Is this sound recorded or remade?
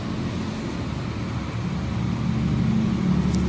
recorded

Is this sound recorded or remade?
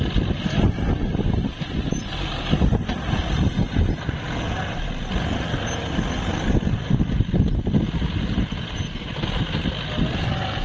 recorded